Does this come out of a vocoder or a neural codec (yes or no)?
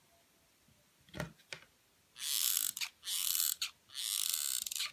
no